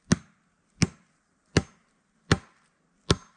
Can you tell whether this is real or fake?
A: real